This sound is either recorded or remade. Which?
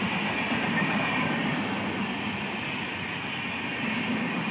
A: recorded